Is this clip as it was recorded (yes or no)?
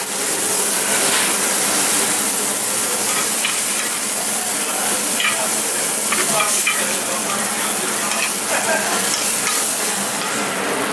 yes